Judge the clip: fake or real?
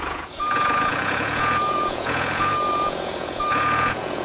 fake